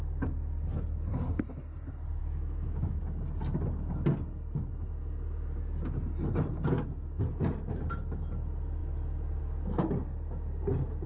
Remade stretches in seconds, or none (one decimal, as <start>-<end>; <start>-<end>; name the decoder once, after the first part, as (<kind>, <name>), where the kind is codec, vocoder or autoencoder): 2.2-3.0 (autoencoder, DAC-VAE)